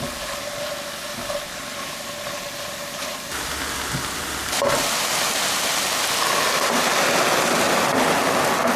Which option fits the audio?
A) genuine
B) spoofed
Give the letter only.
A